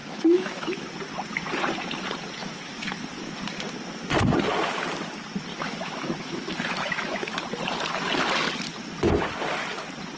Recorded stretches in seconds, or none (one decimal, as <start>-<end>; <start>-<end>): 0.8-2.4; 3.0-5.5; 7.4-10.2